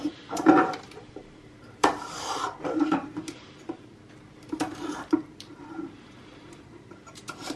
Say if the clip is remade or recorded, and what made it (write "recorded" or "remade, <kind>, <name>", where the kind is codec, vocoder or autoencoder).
remade, vocoder, BigVGAN v2